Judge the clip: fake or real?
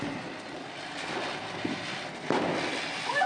real